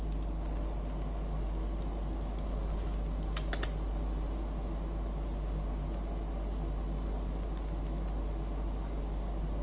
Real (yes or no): yes